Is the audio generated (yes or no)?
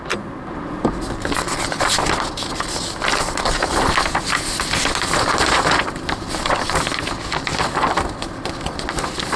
no